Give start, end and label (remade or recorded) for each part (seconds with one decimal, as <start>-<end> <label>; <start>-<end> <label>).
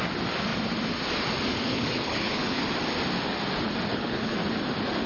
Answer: 0.0-1.5 recorded; 1.5-2.6 remade; 2.6-3.9 recorded; 3.9-4.4 remade; 4.4-5.1 recorded